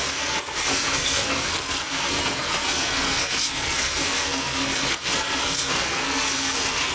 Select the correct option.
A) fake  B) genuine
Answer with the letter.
A